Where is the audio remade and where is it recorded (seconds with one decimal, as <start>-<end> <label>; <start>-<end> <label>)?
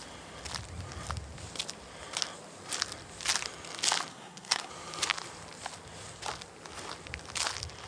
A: 0.0-4.1 recorded; 4.1-4.7 remade; 4.7-7.9 recorded